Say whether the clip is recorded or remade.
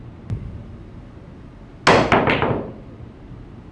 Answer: recorded